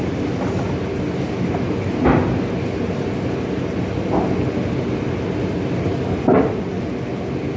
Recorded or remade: recorded